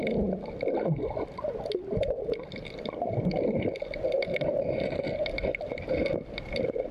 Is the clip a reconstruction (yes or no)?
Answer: no